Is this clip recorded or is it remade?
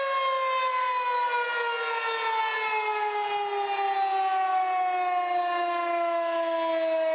recorded